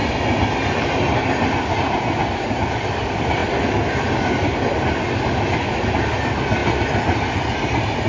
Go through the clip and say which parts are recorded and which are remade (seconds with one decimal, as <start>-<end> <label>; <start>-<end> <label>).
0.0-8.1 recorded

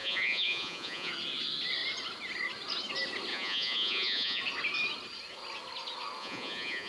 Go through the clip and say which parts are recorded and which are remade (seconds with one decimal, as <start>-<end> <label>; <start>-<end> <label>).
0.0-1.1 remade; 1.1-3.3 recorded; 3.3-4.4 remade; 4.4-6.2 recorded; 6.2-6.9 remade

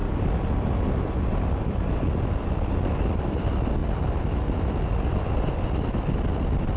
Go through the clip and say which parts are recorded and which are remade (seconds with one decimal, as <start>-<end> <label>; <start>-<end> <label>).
0.0-6.8 recorded